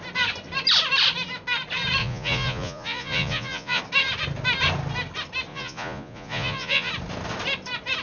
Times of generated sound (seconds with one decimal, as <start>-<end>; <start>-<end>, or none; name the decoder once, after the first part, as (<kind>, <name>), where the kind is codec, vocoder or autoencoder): 2.0-3.8 (vocoder, Vocos); 5.5-6.9